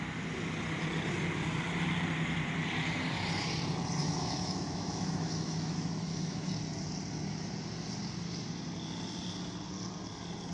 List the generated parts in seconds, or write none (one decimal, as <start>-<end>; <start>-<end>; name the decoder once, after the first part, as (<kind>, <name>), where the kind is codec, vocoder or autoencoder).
4.0-6.5 (autoencoder, DAC-VAE)